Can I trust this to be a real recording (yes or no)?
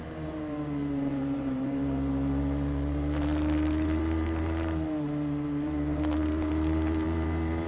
no